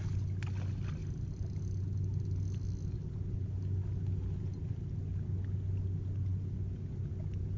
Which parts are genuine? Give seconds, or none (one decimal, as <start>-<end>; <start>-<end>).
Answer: 0.0-7.6